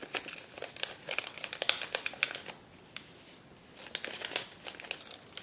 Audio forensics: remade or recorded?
recorded